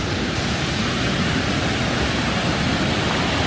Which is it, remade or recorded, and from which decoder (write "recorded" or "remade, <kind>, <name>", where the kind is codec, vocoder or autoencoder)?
recorded